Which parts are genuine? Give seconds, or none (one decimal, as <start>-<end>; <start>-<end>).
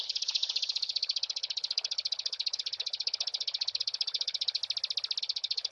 4.6-5.2